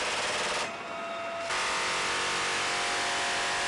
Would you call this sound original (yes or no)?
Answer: yes